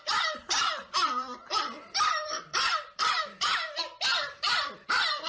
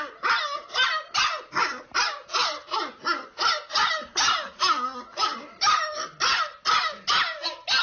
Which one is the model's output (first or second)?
first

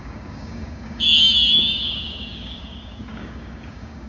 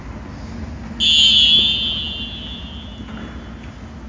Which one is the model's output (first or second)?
first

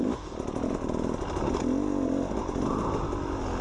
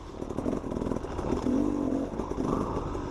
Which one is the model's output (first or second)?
second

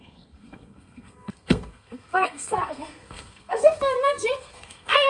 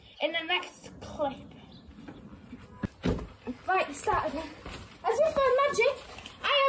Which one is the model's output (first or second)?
first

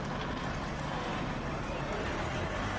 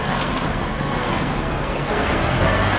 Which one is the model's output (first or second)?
second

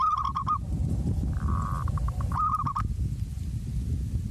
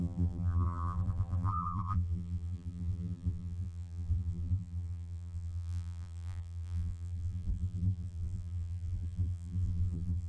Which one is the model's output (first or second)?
second